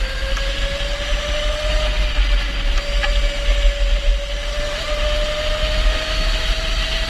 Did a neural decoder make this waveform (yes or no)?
no